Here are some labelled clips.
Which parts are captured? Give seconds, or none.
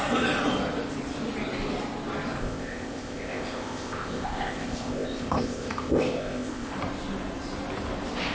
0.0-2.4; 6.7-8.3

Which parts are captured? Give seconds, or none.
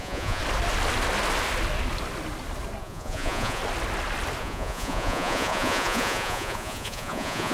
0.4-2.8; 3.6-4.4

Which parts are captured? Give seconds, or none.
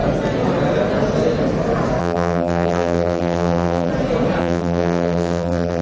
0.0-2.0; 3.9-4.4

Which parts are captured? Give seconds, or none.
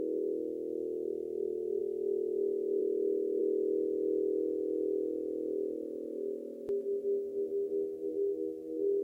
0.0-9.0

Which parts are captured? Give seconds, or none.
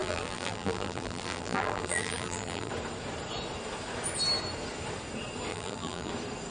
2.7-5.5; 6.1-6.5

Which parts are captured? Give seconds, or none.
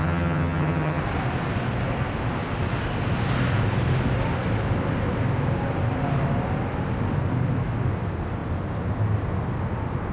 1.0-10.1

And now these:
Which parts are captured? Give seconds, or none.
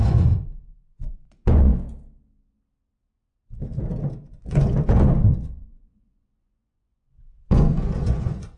1.7-4.3